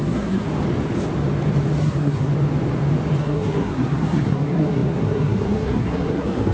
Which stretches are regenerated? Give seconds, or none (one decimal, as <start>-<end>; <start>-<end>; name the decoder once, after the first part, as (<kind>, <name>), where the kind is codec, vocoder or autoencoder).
0.0-0.5 (codec, SNAC); 1.8-2.3; 3.2-6.5